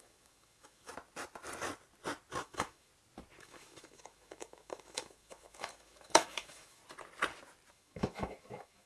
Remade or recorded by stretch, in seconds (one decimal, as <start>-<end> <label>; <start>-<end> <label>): 0.0-0.9 remade; 0.9-2.4 recorded; 2.4-2.9 remade; 2.9-3.4 recorded; 3.4-6.8 remade; 6.8-7.7 recorded; 7.7-8.9 remade